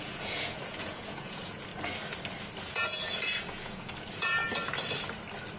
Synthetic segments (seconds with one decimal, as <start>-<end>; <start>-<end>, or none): 0.0-1.7; 2.7-4.4